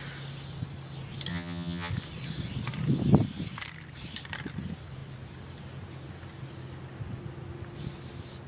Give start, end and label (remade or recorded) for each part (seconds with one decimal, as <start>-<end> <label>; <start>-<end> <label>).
0.0-1.3 recorded; 1.3-1.9 remade; 1.9-8.5 recorded